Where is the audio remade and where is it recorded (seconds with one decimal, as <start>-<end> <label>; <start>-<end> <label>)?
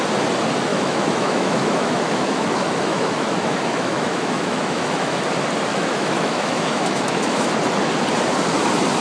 0.0-0.7 recorded; 0.7-5.2 remade; 5.2-5.7 recorded; 5.7-7.5 remade; 7.5-9.0 recorded